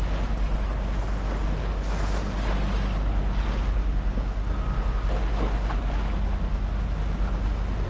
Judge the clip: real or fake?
real